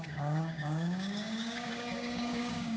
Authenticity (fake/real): fake